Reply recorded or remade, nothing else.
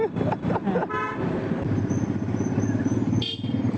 recorded